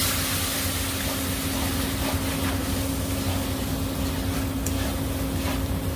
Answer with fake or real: real